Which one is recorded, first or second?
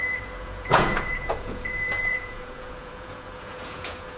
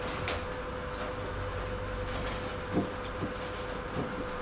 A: second